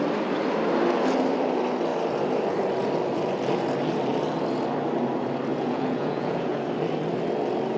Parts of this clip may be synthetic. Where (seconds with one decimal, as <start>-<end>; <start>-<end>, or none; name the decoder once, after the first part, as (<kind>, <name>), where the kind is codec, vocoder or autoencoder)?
5.5-6.7 (vocoder, Vocos)